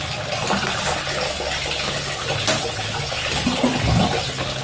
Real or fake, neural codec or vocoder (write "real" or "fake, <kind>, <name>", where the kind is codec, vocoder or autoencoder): real